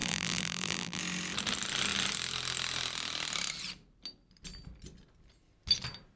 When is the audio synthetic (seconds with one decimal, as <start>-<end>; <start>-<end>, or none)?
0.0-1.0